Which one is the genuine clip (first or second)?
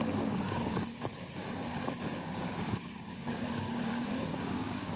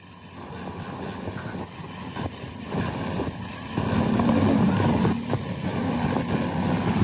second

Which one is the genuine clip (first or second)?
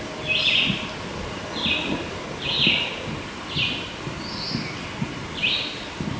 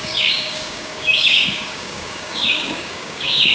first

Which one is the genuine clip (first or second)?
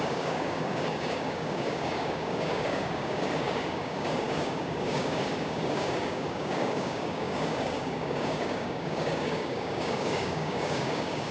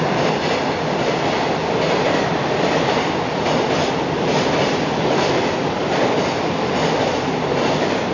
second